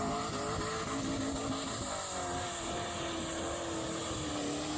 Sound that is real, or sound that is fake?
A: real